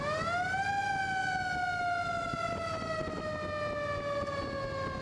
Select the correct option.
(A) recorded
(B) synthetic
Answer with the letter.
A